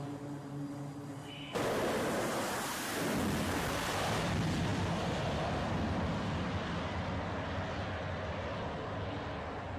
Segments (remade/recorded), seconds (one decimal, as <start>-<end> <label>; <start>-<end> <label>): 0.0-9.8 recorded